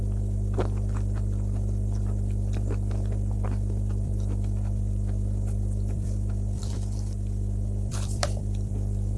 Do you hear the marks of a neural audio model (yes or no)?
yes